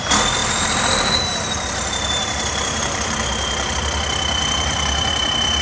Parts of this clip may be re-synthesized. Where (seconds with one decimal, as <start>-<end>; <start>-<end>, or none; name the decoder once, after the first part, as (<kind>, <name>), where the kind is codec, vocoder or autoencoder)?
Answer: 0.4-3.8 (vocoder, BigVGAN v2); 4.4-5.1